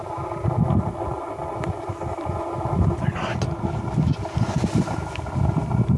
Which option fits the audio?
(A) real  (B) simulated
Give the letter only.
A